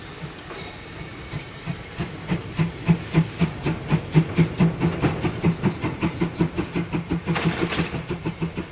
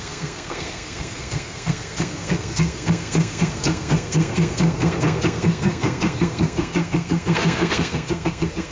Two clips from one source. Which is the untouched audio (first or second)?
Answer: first